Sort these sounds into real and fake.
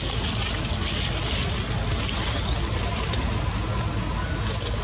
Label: real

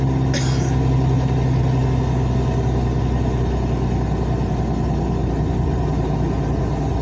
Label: real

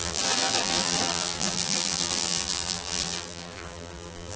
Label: fake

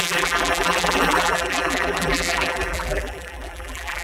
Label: fake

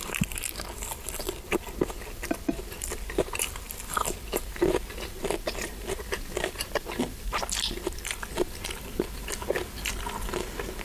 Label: fake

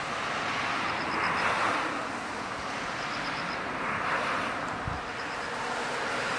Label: real